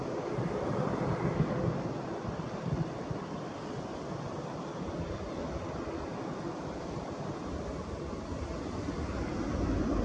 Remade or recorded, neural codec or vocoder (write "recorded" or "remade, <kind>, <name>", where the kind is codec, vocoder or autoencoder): recorded